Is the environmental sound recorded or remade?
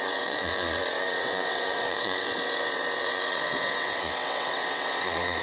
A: remade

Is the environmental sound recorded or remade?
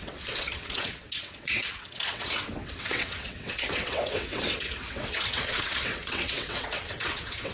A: remade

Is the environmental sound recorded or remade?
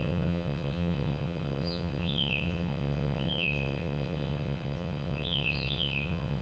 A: remade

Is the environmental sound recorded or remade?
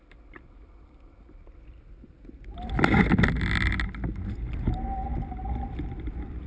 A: recorded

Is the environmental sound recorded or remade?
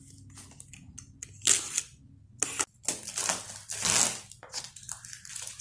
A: recorded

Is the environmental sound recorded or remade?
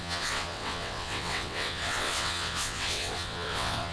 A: remade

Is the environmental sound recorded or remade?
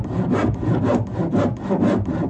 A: recorded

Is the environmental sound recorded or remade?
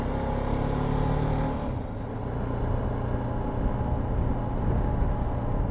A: recorded